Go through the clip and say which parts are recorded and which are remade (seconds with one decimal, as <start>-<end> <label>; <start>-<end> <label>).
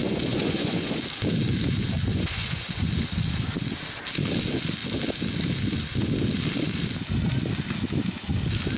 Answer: 0.0-1.0 remade; 1.0-2.1 recorded; 2.1-2.8 remade; 2.8-8.8 recorded